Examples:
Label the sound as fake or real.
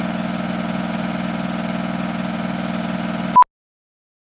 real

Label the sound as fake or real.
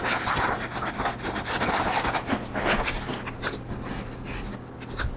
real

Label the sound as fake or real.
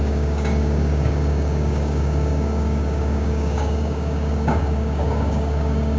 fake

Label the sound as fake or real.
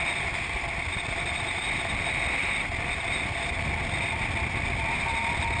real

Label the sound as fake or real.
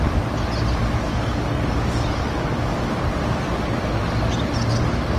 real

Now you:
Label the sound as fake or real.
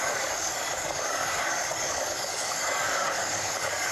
fake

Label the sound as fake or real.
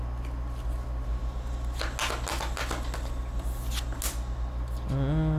real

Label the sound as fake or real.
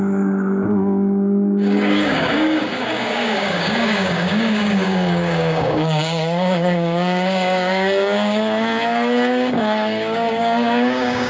fake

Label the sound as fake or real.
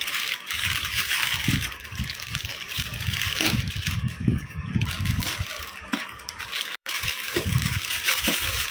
fake